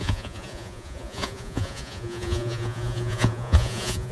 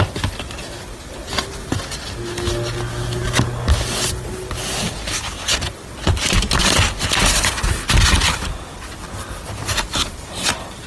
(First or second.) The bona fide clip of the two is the second